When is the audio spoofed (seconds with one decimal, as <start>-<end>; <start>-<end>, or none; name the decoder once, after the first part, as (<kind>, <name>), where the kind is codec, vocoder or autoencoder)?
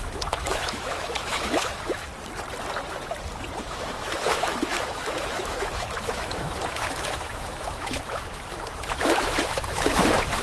0.0-2.1 (autoencoder, DAC-VAE); 3.6-10.4